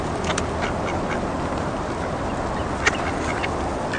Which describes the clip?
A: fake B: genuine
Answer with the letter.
B